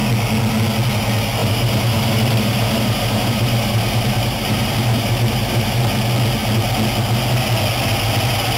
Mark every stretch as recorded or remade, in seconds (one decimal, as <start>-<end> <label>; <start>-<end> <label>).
0.0-1.4 recorded; 1.4-5.8 remade; 5.8-8.6 recorded